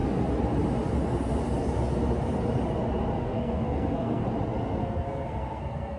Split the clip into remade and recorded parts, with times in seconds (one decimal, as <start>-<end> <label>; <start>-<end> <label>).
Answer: 0.0-3.2 recorded; 3.2-4.2 remade; 4.2-4.8 recorded; 4.8-6.0 remade

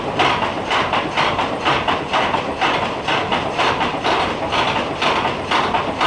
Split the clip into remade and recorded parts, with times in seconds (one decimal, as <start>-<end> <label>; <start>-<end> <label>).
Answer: 0.0-0.5 recorded; 0.5-1.1 remade; 1.1-3.3 recorded; 3.3-4.0 remade; 4.0-6.1 recorded

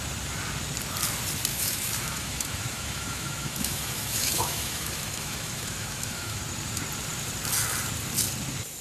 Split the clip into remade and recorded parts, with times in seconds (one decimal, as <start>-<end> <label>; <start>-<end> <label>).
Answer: 0.0-1.5 recorded; 1.5-6.4 remade; 6.4-8.8 recorded

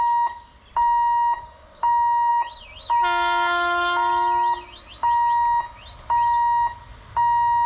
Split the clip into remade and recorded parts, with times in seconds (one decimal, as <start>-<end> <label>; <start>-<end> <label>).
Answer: 0.0-7.7 recorded

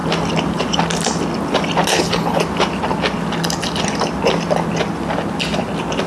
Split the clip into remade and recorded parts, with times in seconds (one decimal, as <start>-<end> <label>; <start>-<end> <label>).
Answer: 0.0-1.9 recorded; 1.9-2.4 remade; 2.4-6.1 recorded

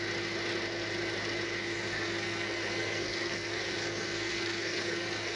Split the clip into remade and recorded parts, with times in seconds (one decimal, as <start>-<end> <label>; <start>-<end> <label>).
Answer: 0.0-1.9 recorded; 1.9-5.4 remade